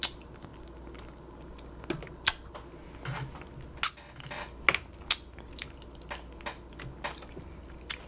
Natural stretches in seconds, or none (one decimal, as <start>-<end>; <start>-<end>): 0.0-8.1